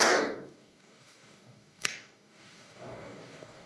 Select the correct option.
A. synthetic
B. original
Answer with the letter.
A